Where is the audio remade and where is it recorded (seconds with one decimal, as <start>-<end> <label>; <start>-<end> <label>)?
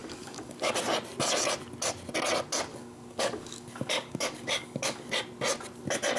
0.0-0.8 remade; 0.8-2.7 recorded; 2.7-5.1 remade; 5.1-6.2 recorded